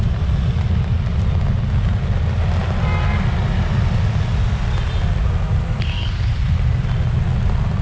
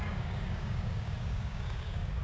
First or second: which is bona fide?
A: first